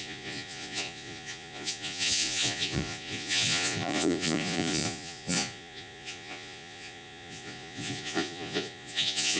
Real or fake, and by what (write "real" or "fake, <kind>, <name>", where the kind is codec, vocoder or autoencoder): fake, vocoder, Vocos